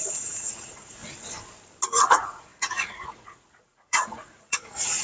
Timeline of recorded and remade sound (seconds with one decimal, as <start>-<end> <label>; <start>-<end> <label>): 0.0-1.0 remade; 1.0-2.0 recorded; 2.0-5.0 remade